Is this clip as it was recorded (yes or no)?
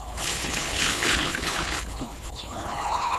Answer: no